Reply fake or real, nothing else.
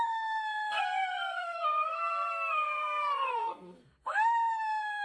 fake